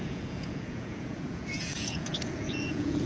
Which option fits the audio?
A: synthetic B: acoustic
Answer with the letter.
A